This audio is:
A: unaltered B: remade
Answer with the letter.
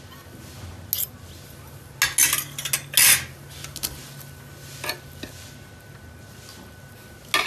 A